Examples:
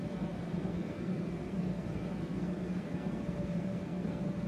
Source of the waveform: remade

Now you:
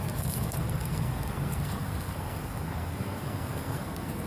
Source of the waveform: remade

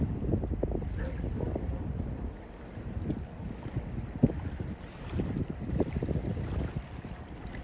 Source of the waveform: recorded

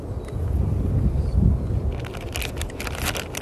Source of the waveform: recorded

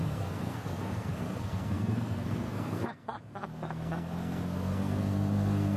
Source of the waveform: remade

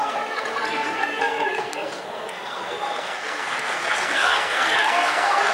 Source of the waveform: remade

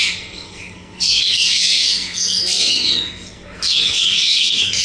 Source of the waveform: remade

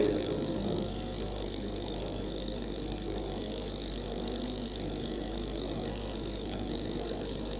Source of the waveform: remade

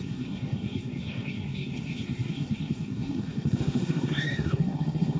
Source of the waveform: remade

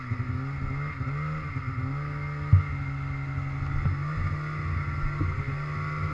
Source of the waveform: recorded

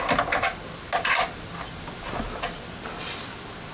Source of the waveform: recorded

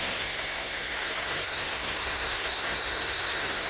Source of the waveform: remade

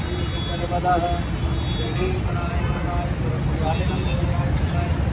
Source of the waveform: recorded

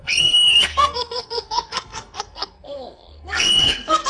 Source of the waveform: remade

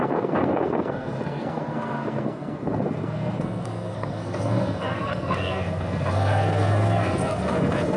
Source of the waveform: remade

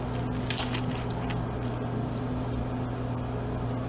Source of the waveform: recorded